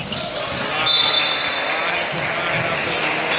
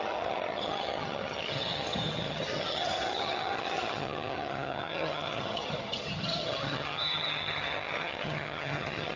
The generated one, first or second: second